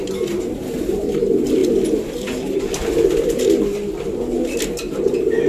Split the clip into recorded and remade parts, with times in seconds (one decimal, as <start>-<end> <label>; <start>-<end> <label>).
0.0-5.5 recorded